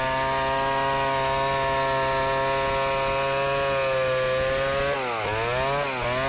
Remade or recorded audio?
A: recorded